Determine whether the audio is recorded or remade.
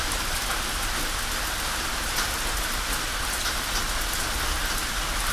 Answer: recorded